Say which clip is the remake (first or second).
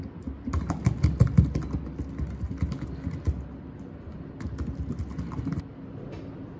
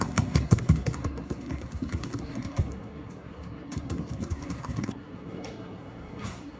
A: second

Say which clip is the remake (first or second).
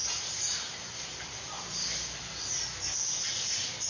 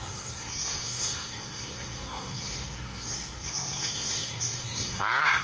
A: second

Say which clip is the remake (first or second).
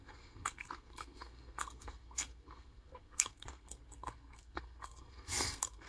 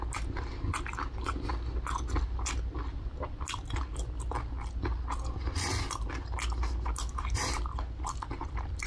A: first